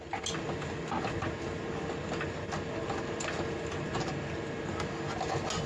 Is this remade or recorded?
recorded